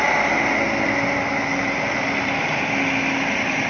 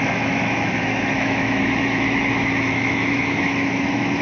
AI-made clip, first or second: second